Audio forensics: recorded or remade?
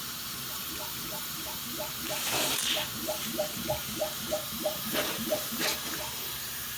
remade